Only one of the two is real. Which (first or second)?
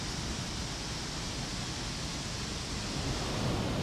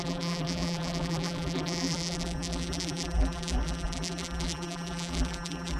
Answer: first